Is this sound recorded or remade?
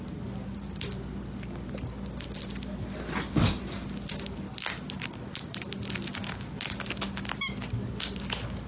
recorded